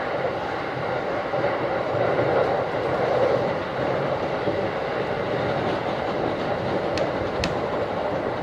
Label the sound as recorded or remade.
remade